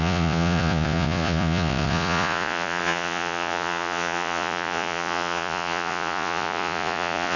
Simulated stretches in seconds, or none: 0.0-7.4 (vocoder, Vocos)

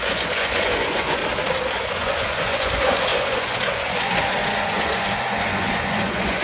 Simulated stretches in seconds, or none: 0.0-1.2 (vocoder, Vocos); 1.8-6.4

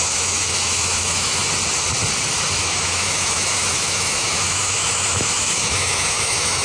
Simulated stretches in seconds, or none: 0.0-1.4 (autoencoder, DAC-VAE); 2.6-6.6

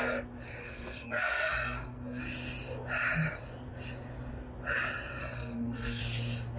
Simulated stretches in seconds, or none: 0.6-2.2 (codec, SNAC); 5.2-6.0